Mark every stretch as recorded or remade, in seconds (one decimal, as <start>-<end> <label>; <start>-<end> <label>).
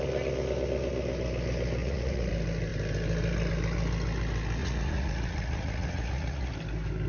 0.0-1.8 recorded; 1.8-2.3 remade; 2.3-4.6 recorded; 4.6-6.5 remade; 6.5-7.1 recorded